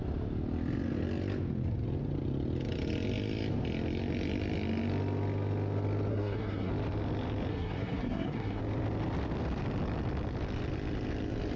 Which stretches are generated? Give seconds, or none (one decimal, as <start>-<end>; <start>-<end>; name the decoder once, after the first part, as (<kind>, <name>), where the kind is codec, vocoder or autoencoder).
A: 6.1-6.7 (codec, SNAC); 7.5-8.6